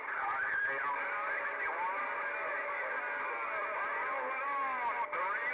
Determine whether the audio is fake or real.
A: real